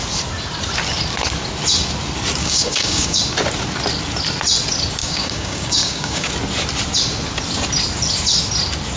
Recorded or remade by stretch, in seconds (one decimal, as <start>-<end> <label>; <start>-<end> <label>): 0.0-2.4 recorded; 2.4-3.2 remade; 3.2-5.0 recorded; 5.0-6.3 remade; 6.3-9.0 recorded